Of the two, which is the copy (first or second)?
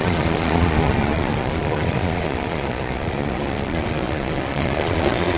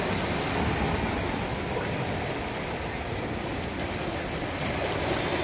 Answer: first